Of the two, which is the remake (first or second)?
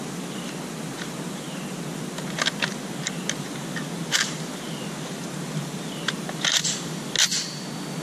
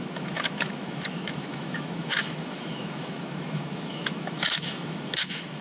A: second